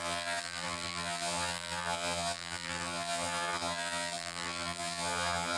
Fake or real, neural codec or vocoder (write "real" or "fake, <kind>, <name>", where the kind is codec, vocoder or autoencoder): fake, vocoder, BigVGAN v2